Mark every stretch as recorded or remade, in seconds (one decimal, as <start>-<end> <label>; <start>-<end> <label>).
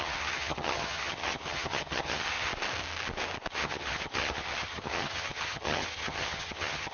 0.0-2.5 remade; 2.5-3.5 recorded; 3.5-6.9 remade